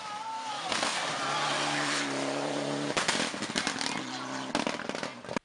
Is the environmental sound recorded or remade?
recorded